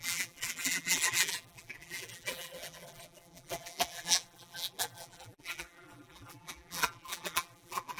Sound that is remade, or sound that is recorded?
remade